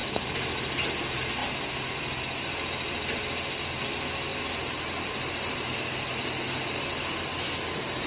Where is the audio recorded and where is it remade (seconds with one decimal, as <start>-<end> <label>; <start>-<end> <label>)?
0.0-0.8 remade; 0.8-8.1 recorded